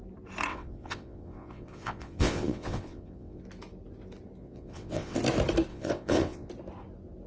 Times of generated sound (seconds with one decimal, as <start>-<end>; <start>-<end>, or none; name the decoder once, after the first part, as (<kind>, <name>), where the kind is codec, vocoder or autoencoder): 0.5-3.4 (vocoder, WaveNeXt); 4.4-5.2; 5.7-6.5